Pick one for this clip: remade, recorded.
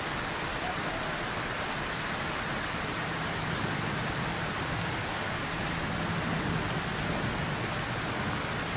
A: recorded